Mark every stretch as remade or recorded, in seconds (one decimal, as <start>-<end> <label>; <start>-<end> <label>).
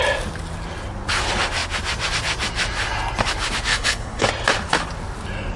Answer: 0.0-3.7 recorded; 3.7-4.3 remade; 4.3-5.6 recorded